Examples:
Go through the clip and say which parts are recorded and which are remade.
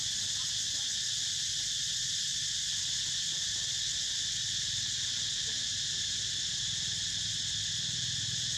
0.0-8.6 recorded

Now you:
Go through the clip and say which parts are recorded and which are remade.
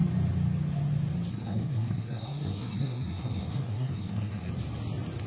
0.0-1.3 recorded; 1.3-4.5 remade; 4.5-5.3 recorded